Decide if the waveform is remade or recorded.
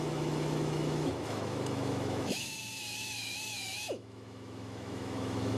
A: remade